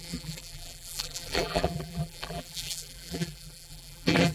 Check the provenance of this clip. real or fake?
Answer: fake